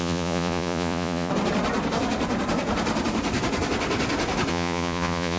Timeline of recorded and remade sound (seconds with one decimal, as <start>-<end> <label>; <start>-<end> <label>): 0.0-1.3 remade; 1.3-4.5 recorded; 4.5-5.4 remade